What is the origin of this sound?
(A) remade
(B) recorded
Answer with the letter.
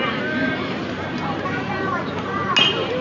B